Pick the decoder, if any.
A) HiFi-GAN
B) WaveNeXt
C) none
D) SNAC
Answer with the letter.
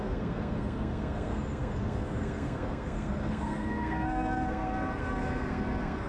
D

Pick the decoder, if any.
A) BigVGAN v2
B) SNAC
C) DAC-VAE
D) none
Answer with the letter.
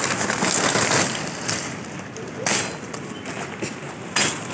D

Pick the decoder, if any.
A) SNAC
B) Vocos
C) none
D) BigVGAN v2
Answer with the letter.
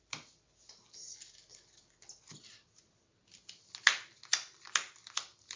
C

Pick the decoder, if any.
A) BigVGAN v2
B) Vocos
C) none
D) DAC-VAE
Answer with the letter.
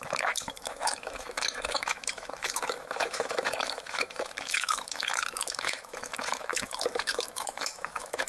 D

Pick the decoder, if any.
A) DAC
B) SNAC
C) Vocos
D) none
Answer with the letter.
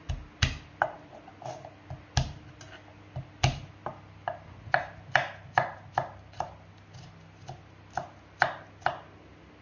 D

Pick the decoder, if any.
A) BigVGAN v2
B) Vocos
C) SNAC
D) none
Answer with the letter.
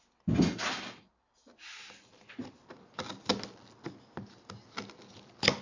D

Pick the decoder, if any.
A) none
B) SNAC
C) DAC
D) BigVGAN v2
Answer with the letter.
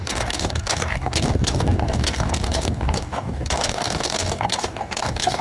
C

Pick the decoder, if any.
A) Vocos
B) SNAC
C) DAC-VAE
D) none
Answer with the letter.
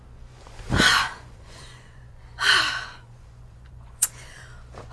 A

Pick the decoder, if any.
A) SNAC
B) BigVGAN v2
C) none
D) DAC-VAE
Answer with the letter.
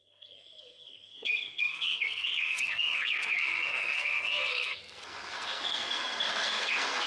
A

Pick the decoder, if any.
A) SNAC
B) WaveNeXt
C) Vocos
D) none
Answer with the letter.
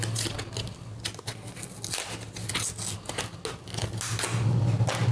D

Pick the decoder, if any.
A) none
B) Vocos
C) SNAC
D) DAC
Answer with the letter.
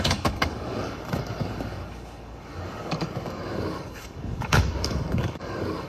D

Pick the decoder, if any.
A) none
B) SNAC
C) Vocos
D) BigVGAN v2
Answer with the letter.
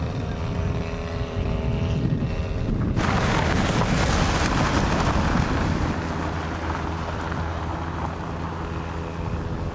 A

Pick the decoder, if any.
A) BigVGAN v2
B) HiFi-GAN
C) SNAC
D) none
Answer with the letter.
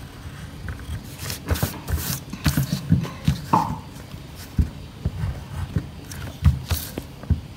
D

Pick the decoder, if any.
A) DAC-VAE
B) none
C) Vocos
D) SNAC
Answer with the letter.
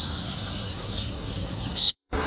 D